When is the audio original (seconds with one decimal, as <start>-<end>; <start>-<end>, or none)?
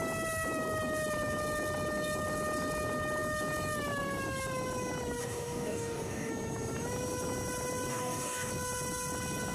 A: 0.0-5.2; 6.3-7.9; 8.5-9.5